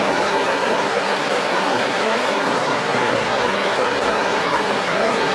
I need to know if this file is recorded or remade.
remade